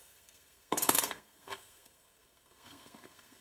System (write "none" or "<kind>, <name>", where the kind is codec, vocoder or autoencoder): codec, SNAC